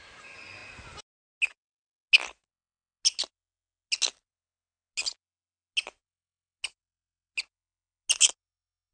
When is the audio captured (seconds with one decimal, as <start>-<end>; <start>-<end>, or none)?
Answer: 0.0-8.9